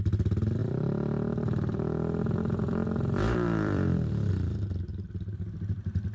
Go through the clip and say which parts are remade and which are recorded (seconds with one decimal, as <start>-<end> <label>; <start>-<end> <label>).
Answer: 0.0-6.1 remade